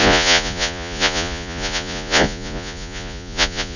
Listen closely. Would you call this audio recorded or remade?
remade